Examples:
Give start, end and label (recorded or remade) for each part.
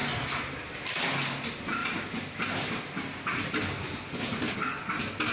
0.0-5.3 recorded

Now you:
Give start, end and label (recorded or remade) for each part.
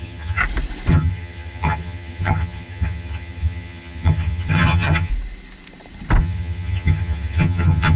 0.0-0.4 remade; 0.4-0.9 recorded; 0.9-5.1 remade; 5.1-6.2 recorded; 6.2-8.0 remade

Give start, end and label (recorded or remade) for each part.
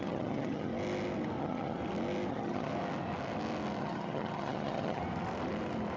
0.0-0.7 remade; 0.7-1.4 recorded; 1.4-1.8 remade; 1.8-2.3 recorded; 2.3-2.7 remade; 2.7-3.8 recorded; 3.8-5.0 remade; 5.0-6.0 recorded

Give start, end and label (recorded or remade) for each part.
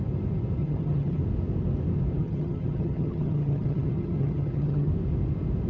0.0-0.6 recorded; 0.6-1.2 remade; 1.2-2.2 recorded; 2.2-4.9 remade; 4.9-5.7 recorded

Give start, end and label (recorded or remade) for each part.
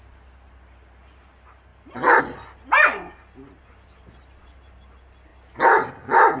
0.0-6.4 recorded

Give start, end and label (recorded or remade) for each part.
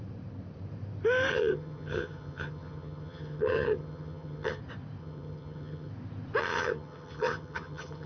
0.0-1.3 recorded; 1.3-4.6 remade; 4.6-5.0 recorded; 5.0-5.9 remade; 5.9-6.4 recorded; 6.4-8.1 remade